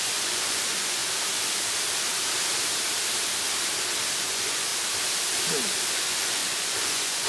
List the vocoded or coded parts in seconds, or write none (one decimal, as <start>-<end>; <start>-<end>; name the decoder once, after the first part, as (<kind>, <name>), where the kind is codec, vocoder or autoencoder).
0.0-1.0 (vocoder, Vocos); 4.2-4.7; 5.9-7.3